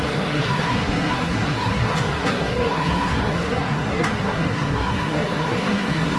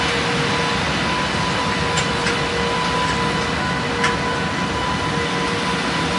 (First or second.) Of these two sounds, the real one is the second